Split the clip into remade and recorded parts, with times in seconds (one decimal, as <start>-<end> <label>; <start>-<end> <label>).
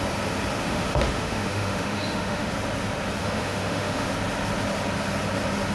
0.0-0.6 recorded; 0.6-2.5 remade; 2.5-3.2 recorded; 3.2-4.1 remade; 4.1-5.7 recorded